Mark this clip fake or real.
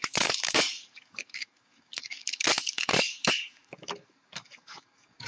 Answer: fake